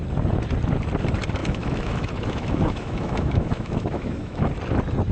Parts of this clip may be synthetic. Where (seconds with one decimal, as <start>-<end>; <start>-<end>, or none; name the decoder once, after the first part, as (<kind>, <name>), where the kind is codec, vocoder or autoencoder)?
1.4-4.5 (autoencoder, DAC-VAE)